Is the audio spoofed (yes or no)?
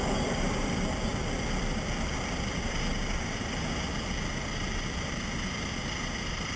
no